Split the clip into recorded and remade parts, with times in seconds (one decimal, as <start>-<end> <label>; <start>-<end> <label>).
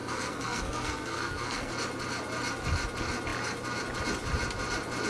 0.0-1.7 remade; 1.7-5.1 recorded